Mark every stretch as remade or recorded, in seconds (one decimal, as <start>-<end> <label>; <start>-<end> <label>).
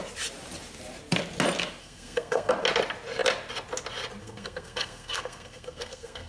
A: 0.0-1.8 recorded; 1.8-2.5 remade; 2.5-4.2 recorded; 4.2-6.3 remade